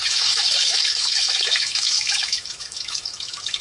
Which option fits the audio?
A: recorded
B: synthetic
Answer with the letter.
B